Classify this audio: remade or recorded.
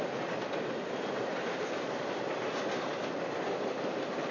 recorded